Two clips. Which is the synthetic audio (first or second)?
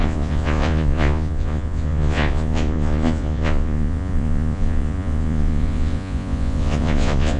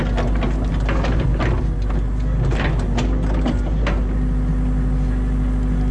first